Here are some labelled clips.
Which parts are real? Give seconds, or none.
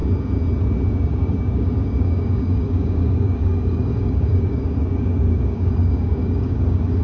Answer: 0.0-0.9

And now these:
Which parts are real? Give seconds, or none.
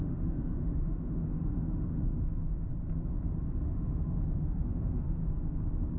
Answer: 2.7-3.6; 5.2-6.0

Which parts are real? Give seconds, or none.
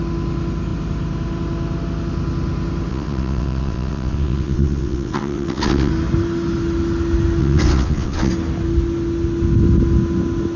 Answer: 0.0-2.9; 5.9-7.4; 8.3-10.6